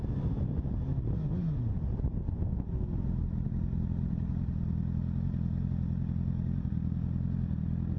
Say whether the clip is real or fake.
real